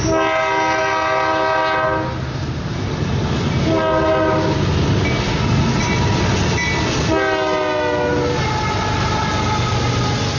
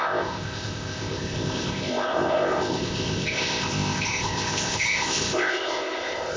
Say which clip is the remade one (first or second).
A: second